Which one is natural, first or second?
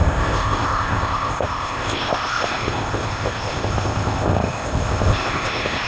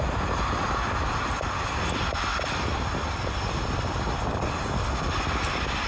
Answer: second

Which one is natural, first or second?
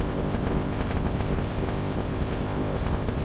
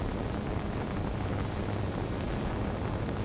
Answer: second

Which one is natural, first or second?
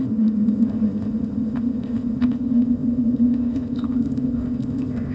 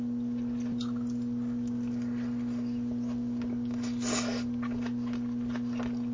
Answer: second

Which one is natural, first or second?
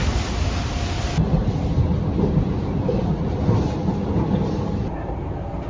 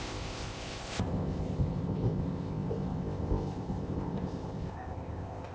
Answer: first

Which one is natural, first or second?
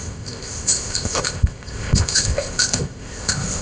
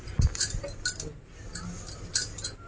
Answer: second